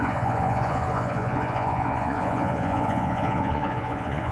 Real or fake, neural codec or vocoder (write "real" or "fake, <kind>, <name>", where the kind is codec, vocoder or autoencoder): fake, vocoder, Vocos